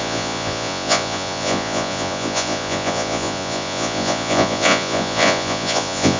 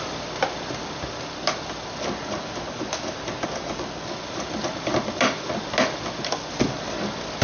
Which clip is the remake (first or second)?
first